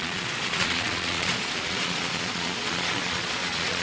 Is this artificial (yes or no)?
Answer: yes